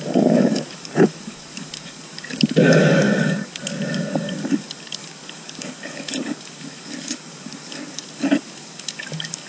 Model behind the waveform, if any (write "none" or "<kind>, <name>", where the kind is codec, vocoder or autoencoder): codec, DAC